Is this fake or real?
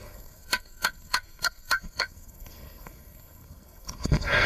fake